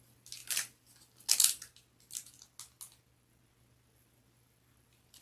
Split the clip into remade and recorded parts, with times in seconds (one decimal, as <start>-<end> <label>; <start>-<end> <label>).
0.0-5.2 recorded